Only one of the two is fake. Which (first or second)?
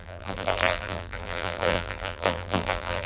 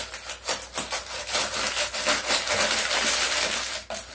first